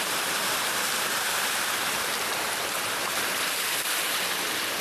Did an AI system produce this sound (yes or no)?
yes